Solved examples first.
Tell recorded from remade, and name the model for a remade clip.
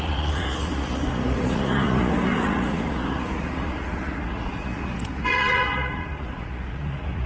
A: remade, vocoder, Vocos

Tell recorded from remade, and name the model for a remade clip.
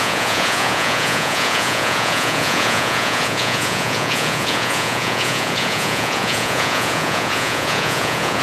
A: remade, vocoder, Vocos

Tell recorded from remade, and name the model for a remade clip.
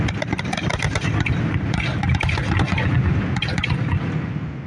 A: recorded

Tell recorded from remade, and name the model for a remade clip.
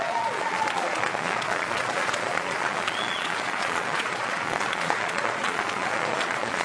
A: remade, vocoder, Vocos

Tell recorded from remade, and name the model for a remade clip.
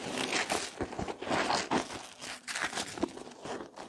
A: recorded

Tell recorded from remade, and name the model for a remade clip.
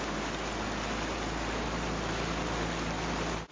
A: recorded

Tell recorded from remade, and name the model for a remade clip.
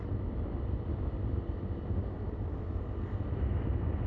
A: recorded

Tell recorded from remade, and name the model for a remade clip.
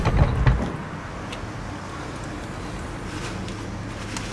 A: recorded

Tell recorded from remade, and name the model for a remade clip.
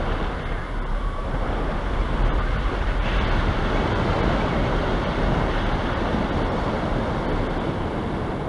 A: recorded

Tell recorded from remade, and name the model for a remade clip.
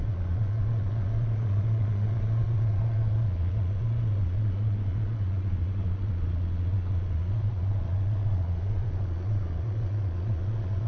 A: remade, vocoder, Vocos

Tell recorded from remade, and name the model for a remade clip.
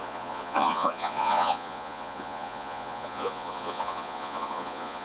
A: remade, vocoder, Vocos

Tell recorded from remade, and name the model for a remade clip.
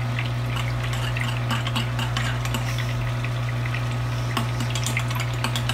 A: recorded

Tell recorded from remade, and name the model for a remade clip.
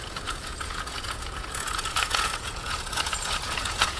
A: remade, vocoder, Vocos